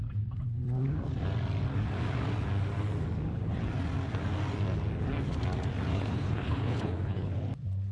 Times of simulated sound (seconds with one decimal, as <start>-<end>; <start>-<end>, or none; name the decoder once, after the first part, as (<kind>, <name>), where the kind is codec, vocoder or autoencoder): 5.9-7.3 (codec, HILCodec)